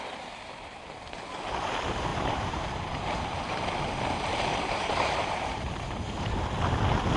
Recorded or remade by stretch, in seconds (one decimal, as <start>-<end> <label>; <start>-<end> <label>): 0.0-2.1 recorded; 2.1-6.4 remade; 6.4-7.2 recorded